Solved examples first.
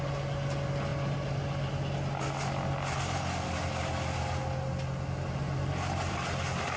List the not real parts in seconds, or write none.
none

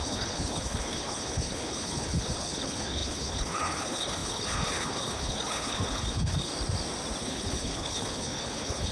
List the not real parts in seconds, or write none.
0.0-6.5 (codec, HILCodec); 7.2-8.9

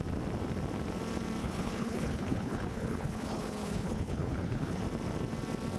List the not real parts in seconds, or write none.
1.4-4.8 (codec, HILCodec)

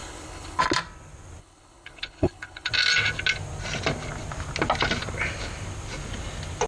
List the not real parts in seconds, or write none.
0.0-0.6 (codec, HILCodec); 1.4-2.7

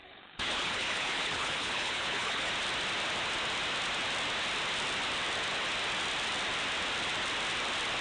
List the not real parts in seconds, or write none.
0.0-2.5 (codec, HILCodec)